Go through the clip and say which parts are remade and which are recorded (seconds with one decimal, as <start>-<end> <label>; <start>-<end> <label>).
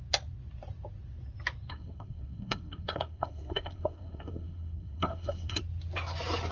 0.0-1.7 recorded; 1.7-5.6 remade; 5.6-6.5 recorded